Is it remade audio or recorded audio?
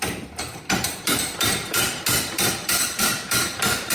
remade